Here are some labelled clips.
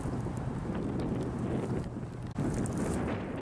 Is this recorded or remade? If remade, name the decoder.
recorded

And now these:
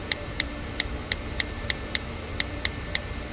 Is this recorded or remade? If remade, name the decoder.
remade, vocoder, BigVGAN v2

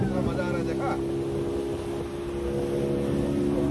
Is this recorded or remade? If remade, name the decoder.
recorded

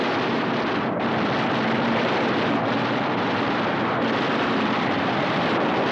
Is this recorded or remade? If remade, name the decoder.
remade, vocoder, BigVGAN v2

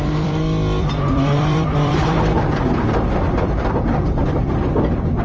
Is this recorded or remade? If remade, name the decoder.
remade, vocoder, BigVGAN v2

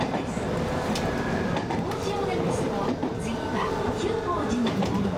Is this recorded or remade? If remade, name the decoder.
remade, vocoder, BigVGAN v2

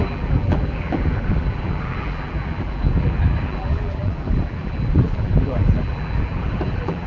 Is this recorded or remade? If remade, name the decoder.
remade, vocoder, BigVGAN v2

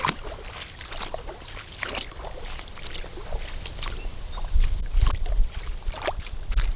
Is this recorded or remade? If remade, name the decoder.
remade, vocoder, BigVGAN v2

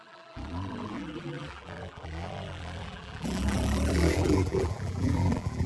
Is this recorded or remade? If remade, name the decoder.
remade, vocoder, BigVGAN v2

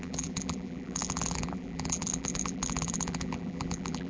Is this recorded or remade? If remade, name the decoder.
remade, vocoder, BigVGAN v2